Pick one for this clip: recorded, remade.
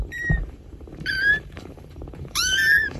remade